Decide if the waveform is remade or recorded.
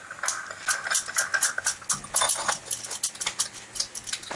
recorded